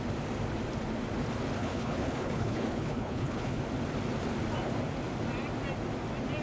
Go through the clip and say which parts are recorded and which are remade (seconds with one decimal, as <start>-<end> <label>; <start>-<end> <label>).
0.0-1.6 recorded; 1.6-3.6 remade; 3.6-6.4 recorded